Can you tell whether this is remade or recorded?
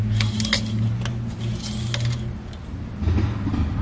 recorded